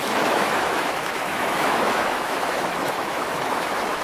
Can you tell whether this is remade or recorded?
remade